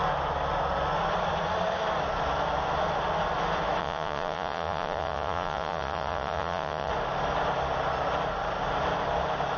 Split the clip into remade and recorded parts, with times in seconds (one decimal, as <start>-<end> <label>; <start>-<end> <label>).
0.0-3.8 recorded; 3.8-6.9 remade; 6.9-9.6 recorded